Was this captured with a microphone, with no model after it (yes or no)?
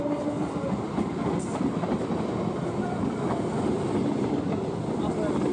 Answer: yes